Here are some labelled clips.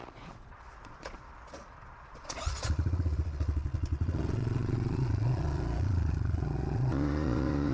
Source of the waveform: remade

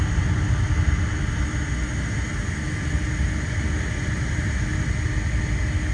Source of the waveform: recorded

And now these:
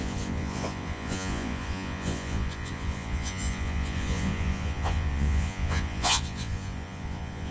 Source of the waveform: remade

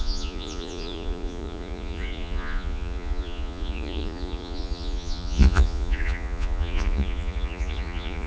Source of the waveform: remade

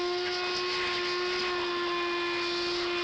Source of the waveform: recorded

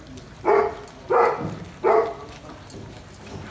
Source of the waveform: recorded